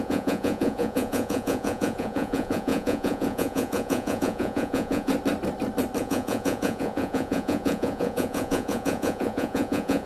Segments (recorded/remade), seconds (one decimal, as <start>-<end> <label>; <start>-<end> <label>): 0.0-5.1 remade; 5.1-6.0 recorded; 6.0-10.1 remade